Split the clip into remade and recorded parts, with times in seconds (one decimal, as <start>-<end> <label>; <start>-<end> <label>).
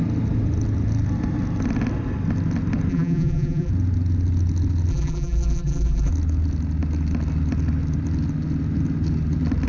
0.0-2.9 recorded; 2.9-3.7 remade; 3.7-4.9 recorded; 4.9-6.1 remade; 6.1-9.7 recorded